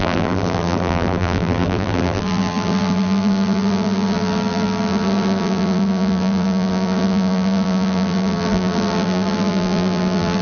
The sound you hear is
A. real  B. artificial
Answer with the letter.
B